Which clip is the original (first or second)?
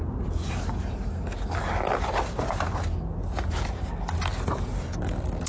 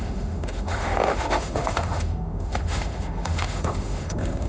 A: first